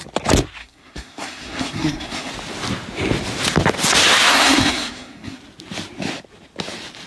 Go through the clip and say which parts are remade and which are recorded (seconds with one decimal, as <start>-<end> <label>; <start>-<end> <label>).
0.0-0.6 recorded; 0.6-2.3 remade; 2.3-4.3 recorded; 4.3-5.4 remade; 5.4-7.1 recorded